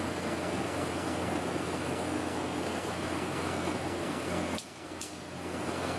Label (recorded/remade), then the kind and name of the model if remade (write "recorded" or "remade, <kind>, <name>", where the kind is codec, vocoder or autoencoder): remade, codec, SNAC